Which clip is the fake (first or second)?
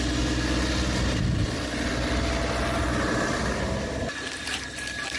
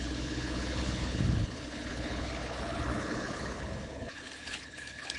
second